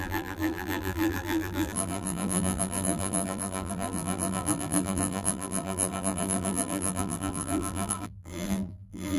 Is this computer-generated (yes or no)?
yes